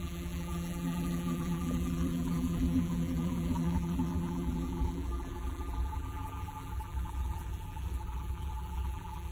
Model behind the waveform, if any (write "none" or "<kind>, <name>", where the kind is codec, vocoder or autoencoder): vocoder, BigVGAN v2